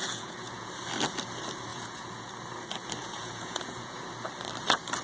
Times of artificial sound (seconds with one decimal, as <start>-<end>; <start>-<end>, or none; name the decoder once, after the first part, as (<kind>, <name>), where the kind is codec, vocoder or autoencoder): 0.0-0.7 (vocoder, Vocos); 1.7-2.3; 3.0-4.1